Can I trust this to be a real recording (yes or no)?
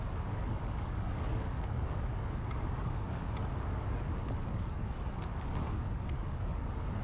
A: no